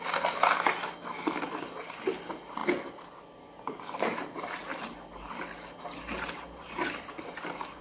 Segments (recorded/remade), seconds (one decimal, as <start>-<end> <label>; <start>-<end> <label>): 0.0-7.8 recorded